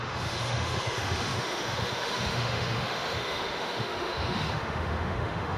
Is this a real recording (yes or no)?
no